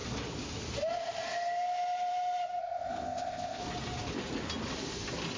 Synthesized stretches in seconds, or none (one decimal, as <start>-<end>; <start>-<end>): 2.6-3.6